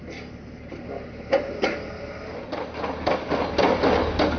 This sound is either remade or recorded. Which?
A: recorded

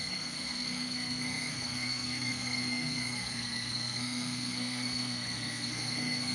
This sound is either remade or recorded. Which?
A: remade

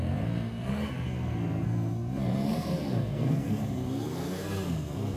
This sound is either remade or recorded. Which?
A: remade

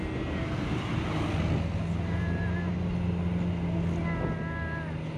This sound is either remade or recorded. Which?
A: recorded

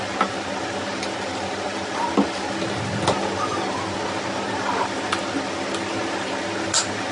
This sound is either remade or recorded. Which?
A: recorded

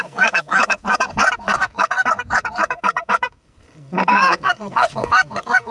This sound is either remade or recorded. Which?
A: remade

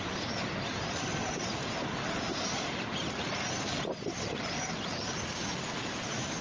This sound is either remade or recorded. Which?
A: recorded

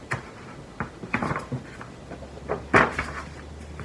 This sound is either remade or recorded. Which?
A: recorded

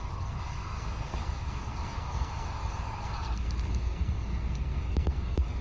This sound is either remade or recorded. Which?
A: remade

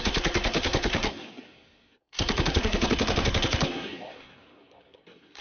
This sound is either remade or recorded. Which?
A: remade